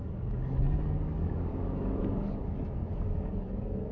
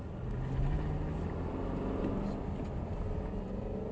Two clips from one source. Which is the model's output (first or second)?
first